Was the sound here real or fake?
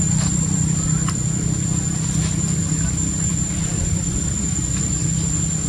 real